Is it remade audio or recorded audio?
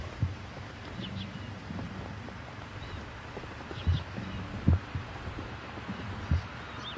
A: remade